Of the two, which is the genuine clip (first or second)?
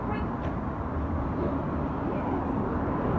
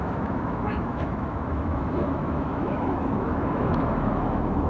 first